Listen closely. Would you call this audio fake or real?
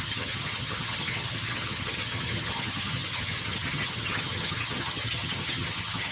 fake